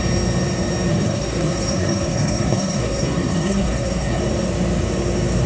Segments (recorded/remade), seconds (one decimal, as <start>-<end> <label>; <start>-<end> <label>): 0.0-0.9 recorded; 0.9-4.2 remade; 4.2-5.5 recorded